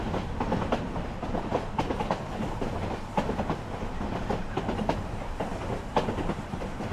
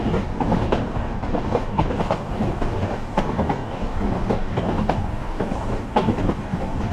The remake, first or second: second